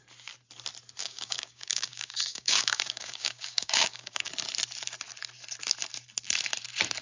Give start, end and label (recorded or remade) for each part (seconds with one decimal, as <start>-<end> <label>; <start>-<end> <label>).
0.0-1.0 recorded; 1.0-4.3 remade; 4.3-7.0 recorded